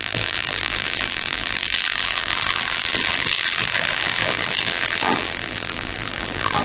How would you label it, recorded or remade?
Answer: remade